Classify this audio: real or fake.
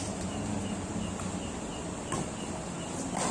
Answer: real